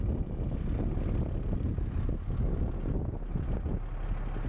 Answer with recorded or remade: recorded